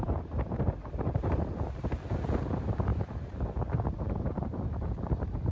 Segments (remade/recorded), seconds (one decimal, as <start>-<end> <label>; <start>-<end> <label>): 0.0-2.9 remade; 2.9-3.6 recorded; 3.6-5.5 remade